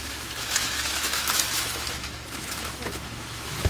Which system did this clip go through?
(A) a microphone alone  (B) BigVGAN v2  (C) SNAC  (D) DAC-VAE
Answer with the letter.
D